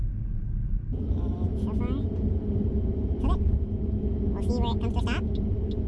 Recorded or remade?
recorded